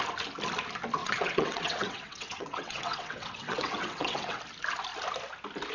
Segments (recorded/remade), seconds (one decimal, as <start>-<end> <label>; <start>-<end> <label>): 0.0-1.0 recorded; 1.0-4.4 remade; 4.4-5.7 recorded